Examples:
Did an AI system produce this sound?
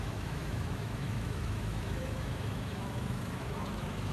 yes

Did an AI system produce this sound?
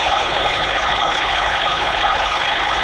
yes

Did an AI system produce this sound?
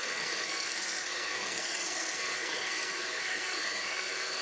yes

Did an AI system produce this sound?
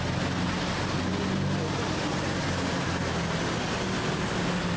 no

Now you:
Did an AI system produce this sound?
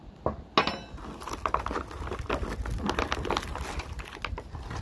no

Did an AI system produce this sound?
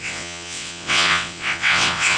yes